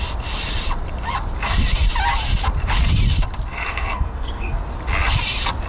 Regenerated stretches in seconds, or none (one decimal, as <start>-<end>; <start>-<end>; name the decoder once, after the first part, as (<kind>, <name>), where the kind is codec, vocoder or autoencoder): 3.5-4.6 (codec, SNAC)